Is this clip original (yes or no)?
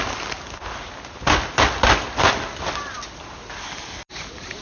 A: yes